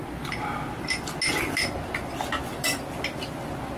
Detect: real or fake real